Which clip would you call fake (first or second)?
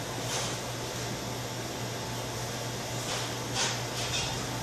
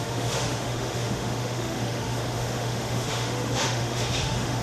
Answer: second